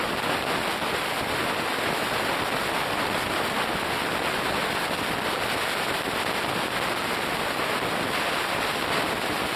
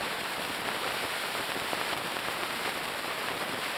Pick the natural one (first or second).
first